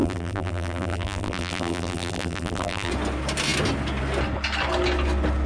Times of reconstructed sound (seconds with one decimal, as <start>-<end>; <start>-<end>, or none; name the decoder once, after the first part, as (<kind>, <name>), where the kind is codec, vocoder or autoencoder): 0.0-2.9 (vocoder, BigVGAN v2)